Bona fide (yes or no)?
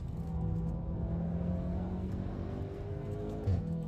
no